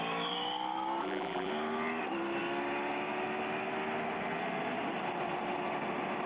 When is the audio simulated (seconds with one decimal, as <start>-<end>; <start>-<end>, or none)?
1.0-1.5